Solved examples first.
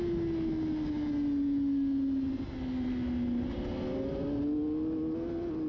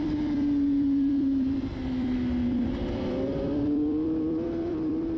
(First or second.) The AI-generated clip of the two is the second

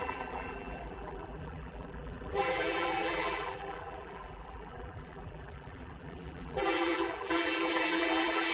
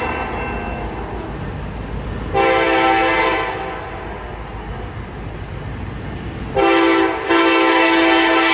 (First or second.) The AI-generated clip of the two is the first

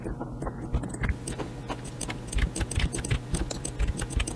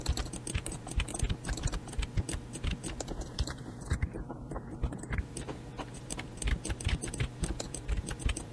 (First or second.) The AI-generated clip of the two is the second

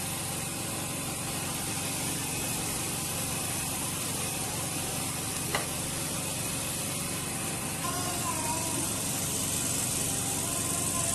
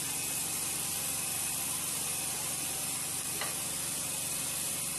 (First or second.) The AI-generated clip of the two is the first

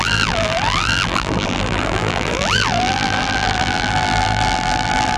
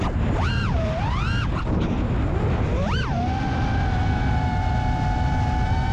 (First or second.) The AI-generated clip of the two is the first